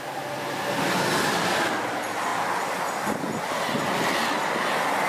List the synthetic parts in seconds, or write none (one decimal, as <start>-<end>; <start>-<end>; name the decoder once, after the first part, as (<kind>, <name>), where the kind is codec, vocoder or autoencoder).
none